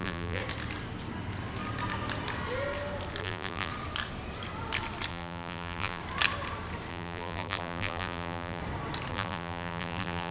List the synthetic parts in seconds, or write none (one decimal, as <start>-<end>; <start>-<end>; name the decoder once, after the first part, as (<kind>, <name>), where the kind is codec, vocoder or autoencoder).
0.0-0.4 (vocoder, BigVGAN v2); 3.2-3.7; 5.1-6.0; 6.9-8.6; 9.1-10.3